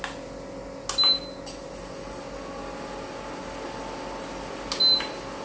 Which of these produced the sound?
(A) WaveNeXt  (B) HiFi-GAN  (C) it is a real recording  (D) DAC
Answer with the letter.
C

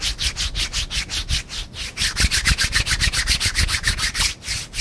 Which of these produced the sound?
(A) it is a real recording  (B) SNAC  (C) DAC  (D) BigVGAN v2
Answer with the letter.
A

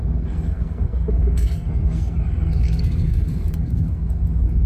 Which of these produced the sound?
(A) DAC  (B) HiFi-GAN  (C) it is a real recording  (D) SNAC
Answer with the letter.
D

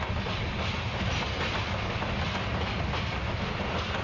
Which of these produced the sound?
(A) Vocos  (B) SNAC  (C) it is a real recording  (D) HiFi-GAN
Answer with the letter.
C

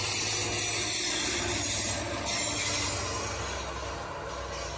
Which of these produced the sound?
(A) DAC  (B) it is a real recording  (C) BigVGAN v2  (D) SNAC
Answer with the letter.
B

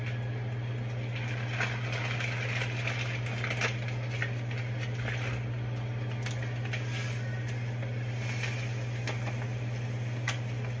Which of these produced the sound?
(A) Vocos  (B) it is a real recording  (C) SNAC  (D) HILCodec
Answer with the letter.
B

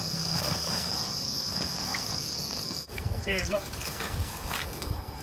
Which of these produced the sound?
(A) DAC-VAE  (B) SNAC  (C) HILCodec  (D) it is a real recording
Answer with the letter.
B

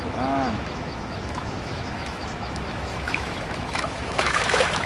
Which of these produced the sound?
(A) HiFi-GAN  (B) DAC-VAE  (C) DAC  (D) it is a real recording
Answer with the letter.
B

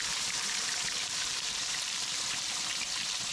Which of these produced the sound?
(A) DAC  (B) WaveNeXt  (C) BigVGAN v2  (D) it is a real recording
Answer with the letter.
C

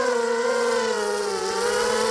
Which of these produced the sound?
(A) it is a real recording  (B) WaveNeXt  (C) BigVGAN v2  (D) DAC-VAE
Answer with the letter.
B